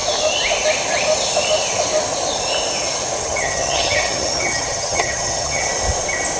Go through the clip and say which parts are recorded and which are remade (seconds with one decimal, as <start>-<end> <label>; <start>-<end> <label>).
0.0-3.2 recorded; 3.2-5.7 remade; 5.7-6.4 recorded